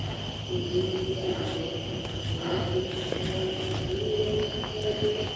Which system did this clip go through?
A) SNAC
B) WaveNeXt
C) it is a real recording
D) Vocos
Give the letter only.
C